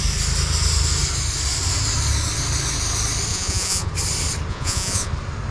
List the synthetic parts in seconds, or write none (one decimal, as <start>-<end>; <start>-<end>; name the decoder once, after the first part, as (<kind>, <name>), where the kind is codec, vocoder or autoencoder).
3.3-3.9 (vocoder, Vocos); 4.5-5.1